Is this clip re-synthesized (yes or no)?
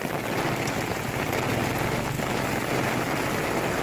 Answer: no